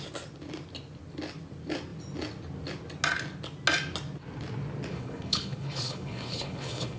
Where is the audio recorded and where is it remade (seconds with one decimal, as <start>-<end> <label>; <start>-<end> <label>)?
0.0-4.9 recorded; 4.9-7.0 remade